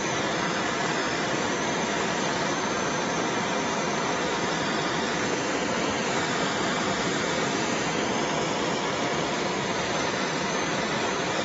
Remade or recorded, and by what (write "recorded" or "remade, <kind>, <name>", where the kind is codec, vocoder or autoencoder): recorded